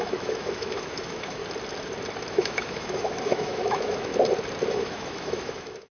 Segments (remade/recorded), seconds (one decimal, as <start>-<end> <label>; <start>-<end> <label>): 0.0-1.4 remade; 1.4-2.3 recorded; 2.3-4.1 remade; 4.1-4.7 recorded; 4.7-6.0 remade